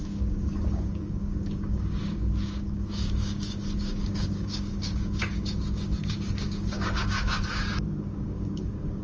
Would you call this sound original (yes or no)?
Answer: no